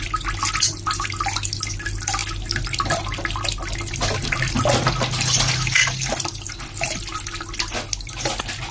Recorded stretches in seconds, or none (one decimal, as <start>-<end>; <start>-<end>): 0.0-8.7